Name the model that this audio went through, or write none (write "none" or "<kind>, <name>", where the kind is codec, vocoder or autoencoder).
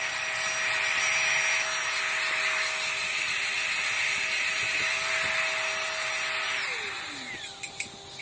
none